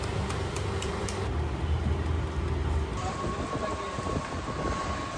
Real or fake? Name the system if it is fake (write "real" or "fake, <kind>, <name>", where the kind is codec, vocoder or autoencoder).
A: real